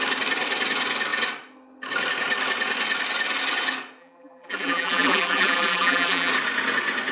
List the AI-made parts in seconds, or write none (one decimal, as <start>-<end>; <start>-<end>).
4.0-6.3